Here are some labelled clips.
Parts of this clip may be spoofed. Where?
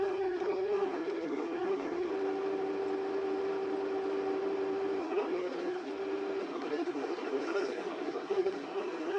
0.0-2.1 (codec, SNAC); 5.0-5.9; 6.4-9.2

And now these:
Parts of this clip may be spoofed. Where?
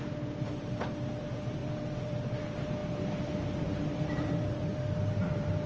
0.0-5.7 (vocoder, BigVGAN v2)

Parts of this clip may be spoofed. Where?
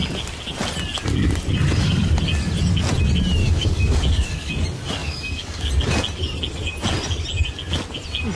3.4-4.5 (codec, DAC); 5.0-5.7